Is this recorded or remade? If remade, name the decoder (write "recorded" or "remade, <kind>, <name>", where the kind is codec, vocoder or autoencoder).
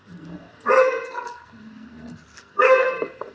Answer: remade, codec, SNAC